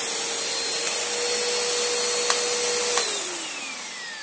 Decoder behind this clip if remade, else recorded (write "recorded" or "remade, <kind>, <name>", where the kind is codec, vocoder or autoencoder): recorded